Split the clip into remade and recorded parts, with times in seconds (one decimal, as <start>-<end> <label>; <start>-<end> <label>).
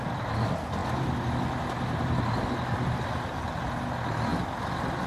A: 0.0-5.1 recorded